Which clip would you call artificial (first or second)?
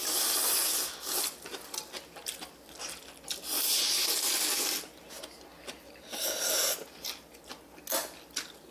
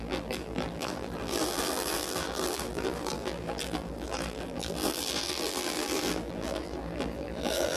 second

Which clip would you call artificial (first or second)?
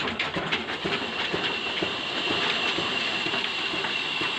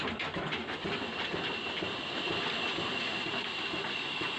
first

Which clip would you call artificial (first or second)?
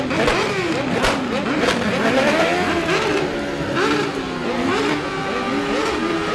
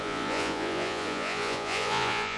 second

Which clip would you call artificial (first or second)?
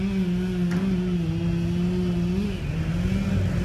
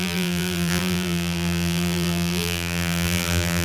second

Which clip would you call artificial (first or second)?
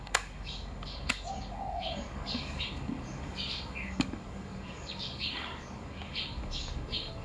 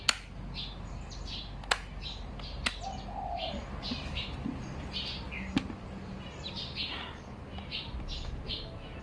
first